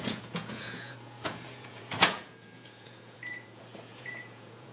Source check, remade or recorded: remade